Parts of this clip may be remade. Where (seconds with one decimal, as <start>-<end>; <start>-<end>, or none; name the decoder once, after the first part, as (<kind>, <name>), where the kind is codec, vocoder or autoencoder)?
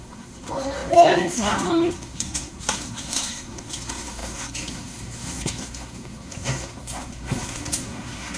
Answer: 0.0-8.4 (codec, SNAC)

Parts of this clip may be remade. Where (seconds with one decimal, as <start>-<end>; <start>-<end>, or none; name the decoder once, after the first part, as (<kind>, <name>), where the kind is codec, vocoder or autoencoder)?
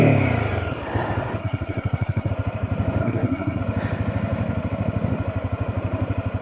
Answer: 1.4-2.3 (codec, SNAC); 3.0-3.6